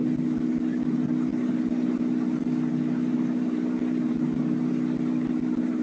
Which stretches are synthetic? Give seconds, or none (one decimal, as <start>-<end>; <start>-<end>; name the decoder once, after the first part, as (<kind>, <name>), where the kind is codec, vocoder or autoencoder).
none